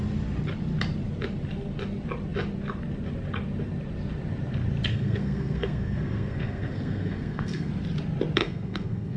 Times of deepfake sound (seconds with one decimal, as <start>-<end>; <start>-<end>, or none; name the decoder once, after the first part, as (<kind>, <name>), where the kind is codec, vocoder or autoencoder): 4.9-7.7 (codec, SNAC); 8.4-9.2